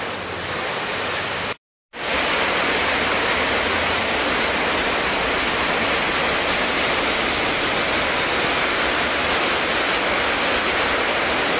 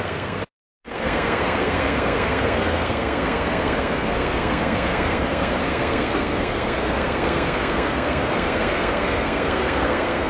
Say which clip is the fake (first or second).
second